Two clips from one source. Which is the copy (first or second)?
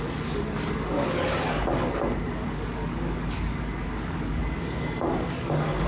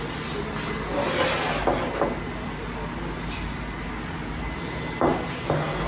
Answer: first